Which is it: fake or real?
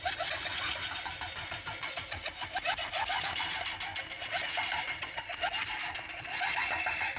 real